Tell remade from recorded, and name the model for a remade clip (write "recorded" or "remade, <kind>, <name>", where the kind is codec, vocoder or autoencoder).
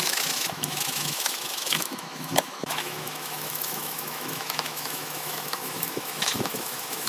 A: remade, autoencoder, DAC-VAE